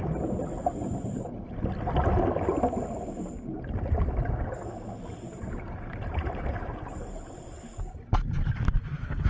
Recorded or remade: recorded